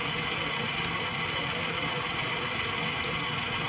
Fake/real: real